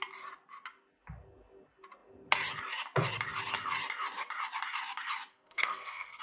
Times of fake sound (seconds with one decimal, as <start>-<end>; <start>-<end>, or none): 5.3-6.2

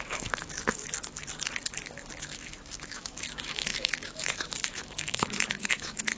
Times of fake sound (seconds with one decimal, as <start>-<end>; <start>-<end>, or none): 0.0-0.8; 2.2-6.2

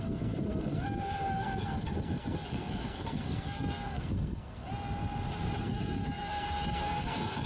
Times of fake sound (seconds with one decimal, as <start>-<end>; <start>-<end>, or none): 0.0-4.7; 5.6-7.5

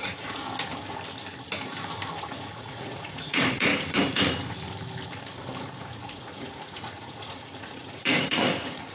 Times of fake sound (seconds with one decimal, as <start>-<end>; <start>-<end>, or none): 0.0-0.4; 2.2-3.7; 5.8-8.9